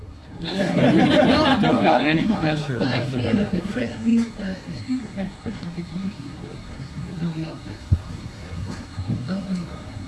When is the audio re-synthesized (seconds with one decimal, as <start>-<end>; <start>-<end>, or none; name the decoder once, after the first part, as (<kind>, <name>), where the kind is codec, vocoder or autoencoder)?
0.0-0.8 (codec, SNAC); 1.7-10.1